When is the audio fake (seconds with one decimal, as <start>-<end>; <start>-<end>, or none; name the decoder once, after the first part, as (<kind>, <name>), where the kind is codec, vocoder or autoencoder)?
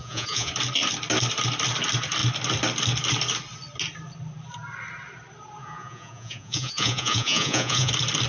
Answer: 0.0-0.5 (vocoder, Vocos); 5.6-7.9